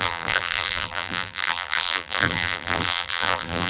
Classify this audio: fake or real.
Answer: fake